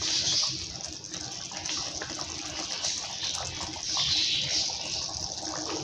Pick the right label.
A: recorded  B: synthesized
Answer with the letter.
A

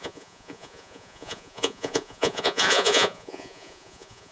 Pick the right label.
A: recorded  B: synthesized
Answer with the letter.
B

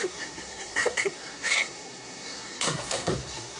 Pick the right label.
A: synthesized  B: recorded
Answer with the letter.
A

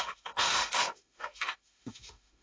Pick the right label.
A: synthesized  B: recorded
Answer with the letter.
A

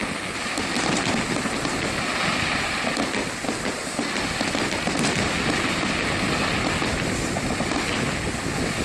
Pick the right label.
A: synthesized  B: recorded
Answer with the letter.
B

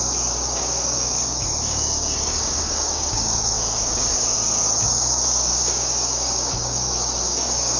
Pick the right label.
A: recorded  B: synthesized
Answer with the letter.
B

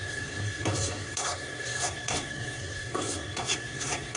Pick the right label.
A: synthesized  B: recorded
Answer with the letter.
A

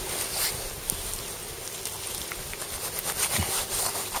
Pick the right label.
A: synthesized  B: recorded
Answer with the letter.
A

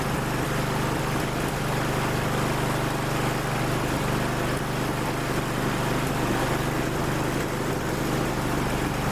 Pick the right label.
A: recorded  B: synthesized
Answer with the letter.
A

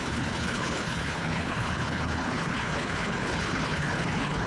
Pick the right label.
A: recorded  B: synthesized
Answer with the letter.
B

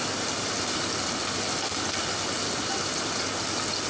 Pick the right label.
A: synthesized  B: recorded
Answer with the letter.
B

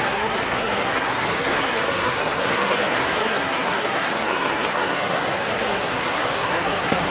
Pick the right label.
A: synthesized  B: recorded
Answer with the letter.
A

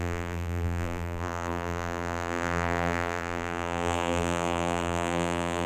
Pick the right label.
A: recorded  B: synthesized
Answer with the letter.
B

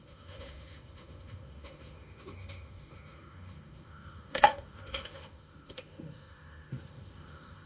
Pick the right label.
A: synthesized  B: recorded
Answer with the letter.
A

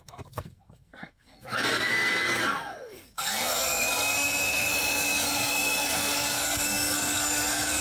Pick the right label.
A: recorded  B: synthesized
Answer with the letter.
B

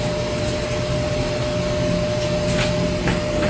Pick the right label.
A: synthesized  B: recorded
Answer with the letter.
B